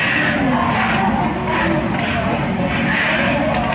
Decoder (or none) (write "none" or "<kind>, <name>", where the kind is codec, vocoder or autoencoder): none